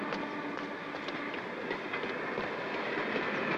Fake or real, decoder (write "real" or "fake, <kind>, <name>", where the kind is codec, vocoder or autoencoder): real